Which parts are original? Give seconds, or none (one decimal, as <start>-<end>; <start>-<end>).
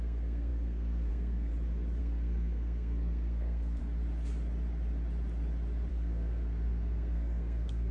1.5-2.0; 3.8-5.9